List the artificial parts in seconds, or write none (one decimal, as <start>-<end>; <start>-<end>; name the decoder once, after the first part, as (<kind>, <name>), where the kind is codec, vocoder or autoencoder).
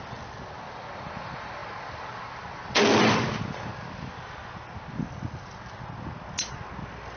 none